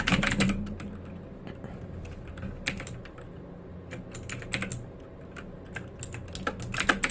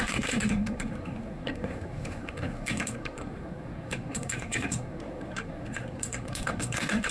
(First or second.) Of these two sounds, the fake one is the second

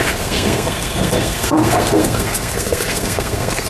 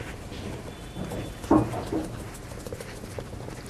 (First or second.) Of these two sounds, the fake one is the first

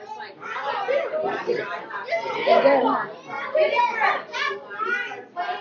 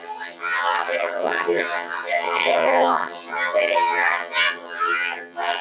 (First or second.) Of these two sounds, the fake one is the second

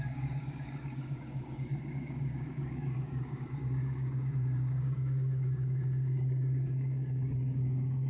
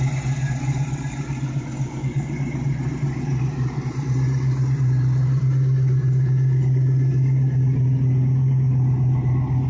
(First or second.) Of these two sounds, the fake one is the first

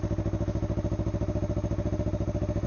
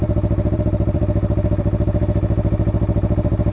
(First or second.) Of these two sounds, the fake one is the second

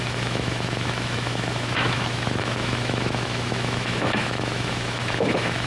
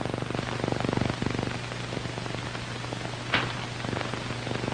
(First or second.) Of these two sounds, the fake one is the first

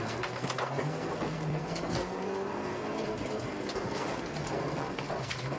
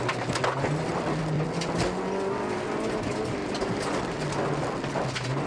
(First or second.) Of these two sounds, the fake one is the first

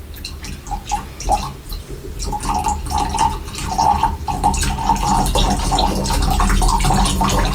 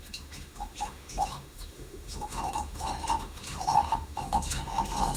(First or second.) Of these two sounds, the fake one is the second